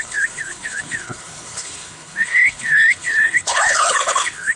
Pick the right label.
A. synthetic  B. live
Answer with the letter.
A